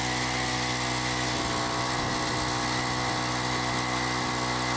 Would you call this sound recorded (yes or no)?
yes